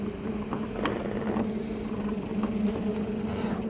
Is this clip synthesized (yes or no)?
no